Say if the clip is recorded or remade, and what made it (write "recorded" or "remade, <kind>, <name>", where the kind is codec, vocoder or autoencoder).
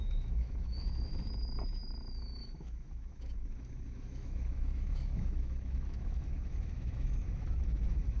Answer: remade, autoencoder, DAC-VAE